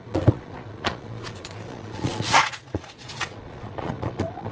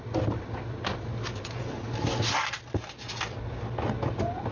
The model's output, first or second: first